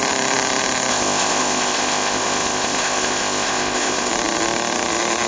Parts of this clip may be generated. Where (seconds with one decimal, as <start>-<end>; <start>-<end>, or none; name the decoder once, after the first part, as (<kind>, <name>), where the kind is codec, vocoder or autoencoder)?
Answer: 0.9-4.1 (codec, ZipCodec)